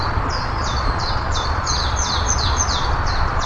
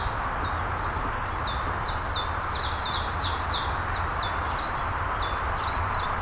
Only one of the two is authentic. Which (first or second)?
second